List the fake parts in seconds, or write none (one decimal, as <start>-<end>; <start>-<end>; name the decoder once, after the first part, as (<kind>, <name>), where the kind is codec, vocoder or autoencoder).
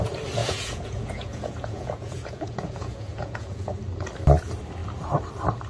0.4-3.8 (vocoder, Vocos)